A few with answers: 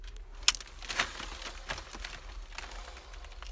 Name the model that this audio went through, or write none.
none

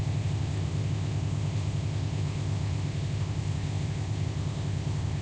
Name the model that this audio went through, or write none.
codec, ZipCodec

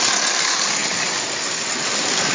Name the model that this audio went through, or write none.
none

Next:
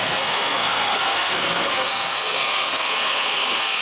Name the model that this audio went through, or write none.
codec, SNAC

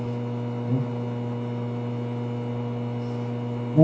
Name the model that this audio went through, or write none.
none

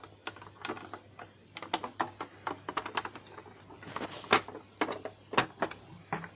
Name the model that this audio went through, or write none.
none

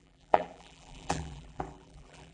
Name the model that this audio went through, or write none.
vocoder, BigVGAN v2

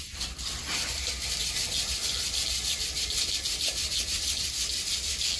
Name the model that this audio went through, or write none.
none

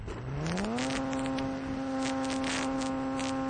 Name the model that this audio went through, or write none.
none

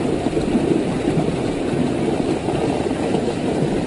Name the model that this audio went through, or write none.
none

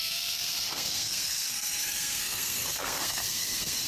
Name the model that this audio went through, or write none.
codec, SNAC